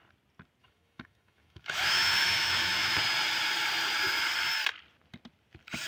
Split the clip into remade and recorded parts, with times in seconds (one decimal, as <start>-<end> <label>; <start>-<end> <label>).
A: 0.0-0.6 recorded; 0.6-2.9 remade; 2.9-5.9 recorded